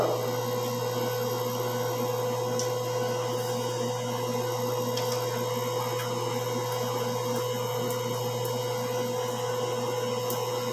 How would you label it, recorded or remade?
recorded